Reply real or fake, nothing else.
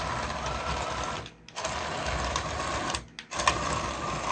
real